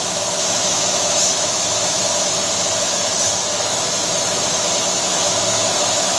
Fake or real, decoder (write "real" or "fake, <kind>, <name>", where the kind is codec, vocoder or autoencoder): fake, autoencoder, DAC-VAE